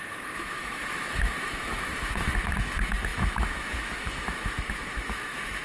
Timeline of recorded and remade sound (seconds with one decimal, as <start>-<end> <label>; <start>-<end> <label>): 0.0-5.6 remade